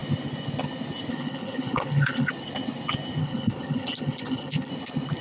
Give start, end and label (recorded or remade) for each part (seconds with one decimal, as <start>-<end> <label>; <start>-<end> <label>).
0.0-1.1 recorded; 1.1-2.3 remade; 2.3-3.2 recorded; 3.2-4.7 remade; 4.7-5.2 recorded